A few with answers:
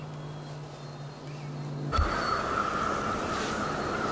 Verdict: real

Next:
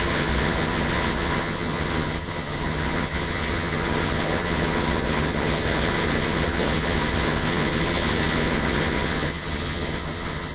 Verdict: fake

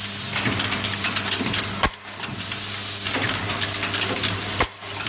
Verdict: real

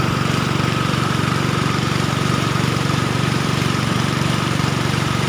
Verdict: fake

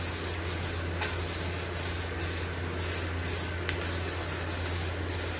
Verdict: real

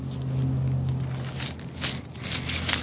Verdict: real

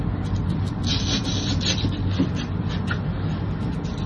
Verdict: real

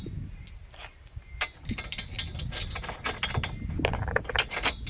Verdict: real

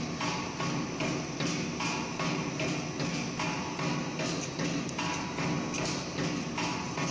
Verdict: real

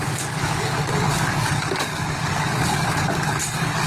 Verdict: fake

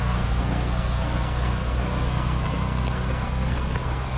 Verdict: fake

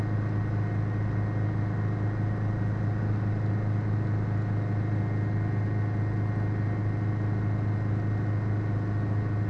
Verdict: real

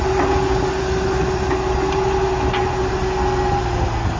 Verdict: real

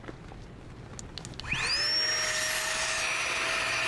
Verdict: real